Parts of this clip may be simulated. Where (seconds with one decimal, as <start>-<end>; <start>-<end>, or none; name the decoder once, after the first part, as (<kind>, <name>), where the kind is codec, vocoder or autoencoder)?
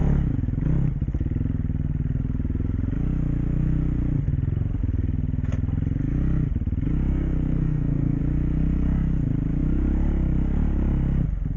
7.1-8.2 (codec, SNAC)